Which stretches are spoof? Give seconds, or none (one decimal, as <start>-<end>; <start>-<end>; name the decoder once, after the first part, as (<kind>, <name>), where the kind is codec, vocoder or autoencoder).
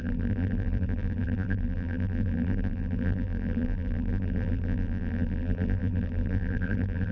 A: 0.0-7.1 (vocoder, BigVGAN v2)